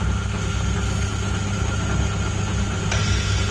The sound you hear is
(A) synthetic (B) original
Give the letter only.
B